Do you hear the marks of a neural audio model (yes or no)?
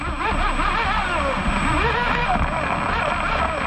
no